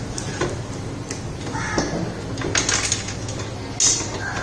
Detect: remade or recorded recorded